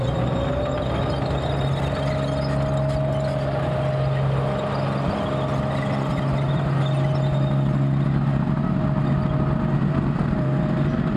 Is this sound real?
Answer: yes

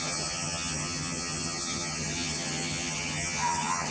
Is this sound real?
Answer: no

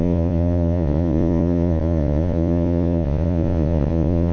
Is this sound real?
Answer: no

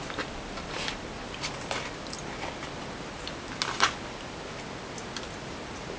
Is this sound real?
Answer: yes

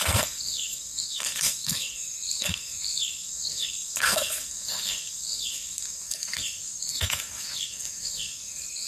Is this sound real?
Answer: no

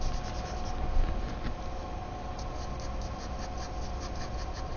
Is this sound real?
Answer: yes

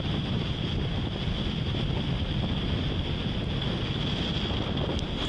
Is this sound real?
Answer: yes